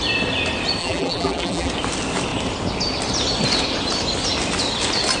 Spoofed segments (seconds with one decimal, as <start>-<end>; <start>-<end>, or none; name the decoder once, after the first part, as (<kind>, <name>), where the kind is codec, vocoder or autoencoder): 0.8-1.7 (vocoder, BigVGAN v2)